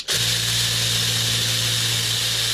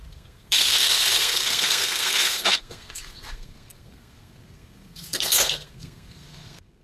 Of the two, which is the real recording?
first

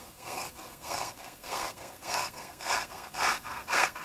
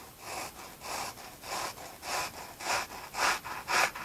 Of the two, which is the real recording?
second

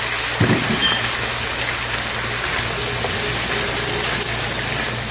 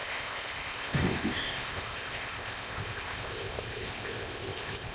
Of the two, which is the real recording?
first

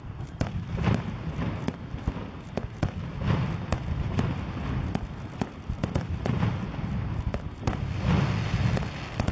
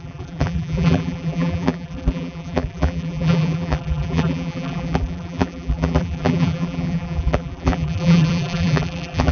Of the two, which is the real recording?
first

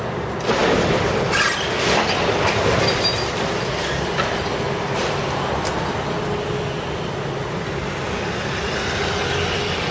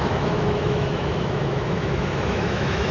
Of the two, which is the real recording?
first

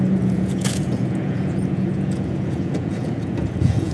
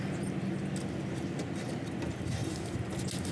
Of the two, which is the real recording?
second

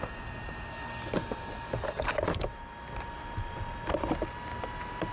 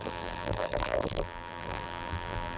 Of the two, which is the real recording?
first